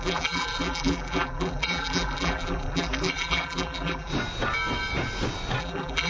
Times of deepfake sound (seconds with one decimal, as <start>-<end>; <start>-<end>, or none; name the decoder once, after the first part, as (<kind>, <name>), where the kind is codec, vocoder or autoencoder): 0.0-4.1 (vocoder, BigVGAN v2); 5.6-6.1